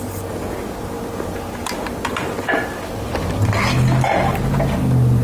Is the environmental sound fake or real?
real